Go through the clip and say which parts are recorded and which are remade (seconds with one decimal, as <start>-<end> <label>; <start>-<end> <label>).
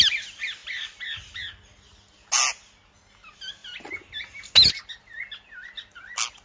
0.0-6.4 recorded